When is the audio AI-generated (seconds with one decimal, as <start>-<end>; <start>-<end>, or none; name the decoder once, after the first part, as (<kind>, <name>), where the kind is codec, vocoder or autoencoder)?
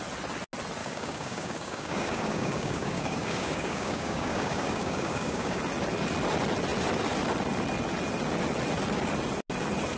0.8-5.6 (codec, DAC)